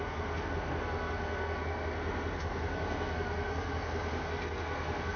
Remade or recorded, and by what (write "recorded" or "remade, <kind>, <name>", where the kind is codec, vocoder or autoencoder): remade, codec, SNAC